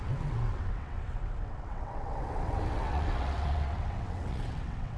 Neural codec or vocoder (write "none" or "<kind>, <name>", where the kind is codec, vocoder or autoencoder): vocoder, WaveNeXt